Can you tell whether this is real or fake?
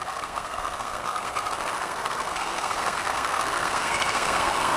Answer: fake